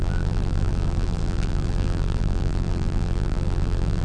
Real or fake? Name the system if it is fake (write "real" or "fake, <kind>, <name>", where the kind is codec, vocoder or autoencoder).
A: fake, vocoder, BigVGAN v2